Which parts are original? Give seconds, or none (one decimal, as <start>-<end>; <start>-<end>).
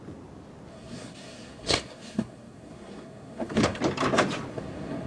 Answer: 0.0-0.7; 3.8-4.5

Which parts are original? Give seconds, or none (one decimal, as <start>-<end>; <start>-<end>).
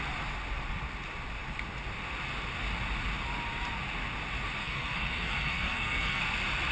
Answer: 0.0-4.6; 6.2-6.7